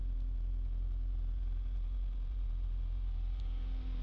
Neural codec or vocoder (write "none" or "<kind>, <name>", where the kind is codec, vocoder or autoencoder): vocoder, BigVGAN v2